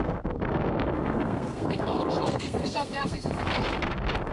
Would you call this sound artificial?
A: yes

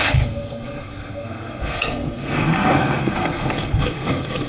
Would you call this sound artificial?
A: yes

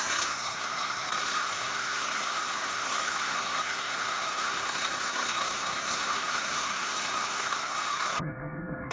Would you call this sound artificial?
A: yes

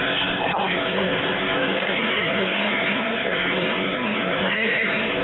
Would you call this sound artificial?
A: yes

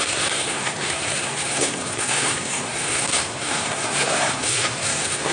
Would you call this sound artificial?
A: yes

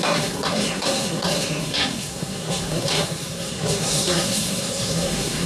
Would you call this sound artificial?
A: yes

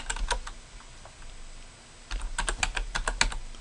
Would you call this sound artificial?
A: no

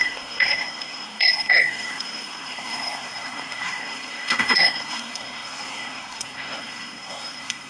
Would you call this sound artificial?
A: yes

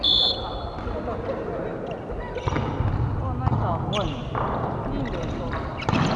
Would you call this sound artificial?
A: no